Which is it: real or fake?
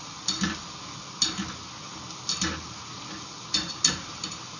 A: real